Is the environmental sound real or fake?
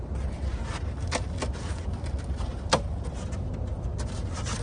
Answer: real